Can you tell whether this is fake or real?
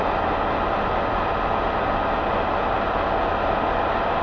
real